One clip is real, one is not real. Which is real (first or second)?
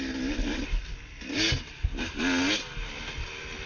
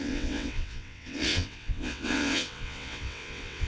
first